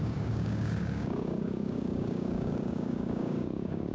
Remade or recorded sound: remade